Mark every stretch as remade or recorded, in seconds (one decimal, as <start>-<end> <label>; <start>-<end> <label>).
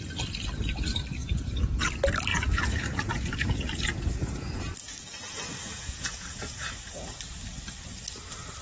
0.0-1.2 recorded; 1.2-1.9 remade; 1.9-2.3 recorded; 2.3-4.6 remade; 4.6-5.7 recorded; 5.7-7.2 remade; 7.2-8.6 recorded